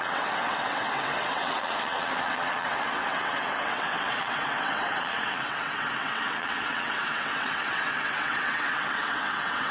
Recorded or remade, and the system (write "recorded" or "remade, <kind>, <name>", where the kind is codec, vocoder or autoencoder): remade, vocoder, WaveNeXt